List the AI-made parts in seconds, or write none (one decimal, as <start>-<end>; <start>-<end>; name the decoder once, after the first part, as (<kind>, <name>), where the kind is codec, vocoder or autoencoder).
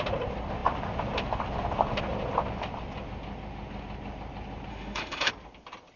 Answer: 4.7-5.3 (autoencoder, DAC-VAE)